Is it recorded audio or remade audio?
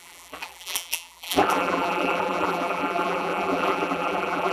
remade